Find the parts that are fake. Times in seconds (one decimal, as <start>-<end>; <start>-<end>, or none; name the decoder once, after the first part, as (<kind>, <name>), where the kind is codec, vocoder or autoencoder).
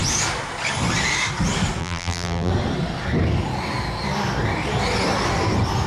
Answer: 1.8-2.5 (vocoder, BigVGAN v2)